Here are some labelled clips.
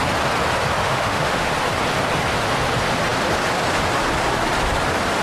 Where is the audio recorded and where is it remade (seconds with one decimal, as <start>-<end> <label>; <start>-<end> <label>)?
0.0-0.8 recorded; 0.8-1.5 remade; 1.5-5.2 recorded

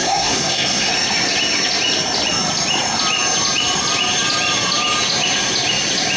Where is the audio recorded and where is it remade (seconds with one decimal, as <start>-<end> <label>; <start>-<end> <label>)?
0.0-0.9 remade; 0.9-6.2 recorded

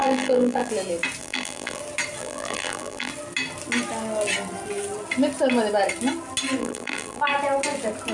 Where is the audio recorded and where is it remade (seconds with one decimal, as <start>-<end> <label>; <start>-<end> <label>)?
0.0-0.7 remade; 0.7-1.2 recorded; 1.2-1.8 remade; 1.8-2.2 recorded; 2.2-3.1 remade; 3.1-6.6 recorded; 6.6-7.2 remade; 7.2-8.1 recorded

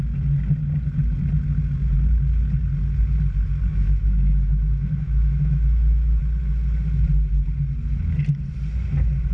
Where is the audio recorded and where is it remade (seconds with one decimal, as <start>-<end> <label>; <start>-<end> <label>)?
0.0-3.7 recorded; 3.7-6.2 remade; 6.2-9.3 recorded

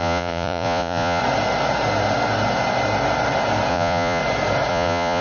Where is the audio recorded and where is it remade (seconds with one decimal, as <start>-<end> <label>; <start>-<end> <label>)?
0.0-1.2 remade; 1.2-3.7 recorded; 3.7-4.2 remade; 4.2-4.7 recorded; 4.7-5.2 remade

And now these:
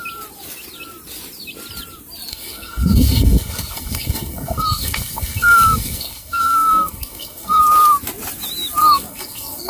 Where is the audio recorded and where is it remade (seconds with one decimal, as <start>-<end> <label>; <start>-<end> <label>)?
0.0-2.3 recorded; 2.3-7.6 remade; 7.6-8.8 recorded; 8.8-9.7 remade

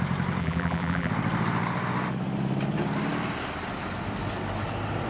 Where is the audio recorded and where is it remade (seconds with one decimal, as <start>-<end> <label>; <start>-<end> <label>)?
0.0-0.4 recorded; 0.4-1.1 remade; 1.1-5.1 recorded

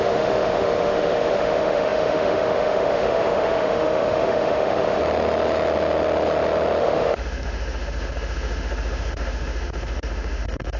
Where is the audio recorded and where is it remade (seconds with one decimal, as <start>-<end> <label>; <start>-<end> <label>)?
0.0-5.0 remade; 5.0-6.8 recorded; 6.8-10.8 remade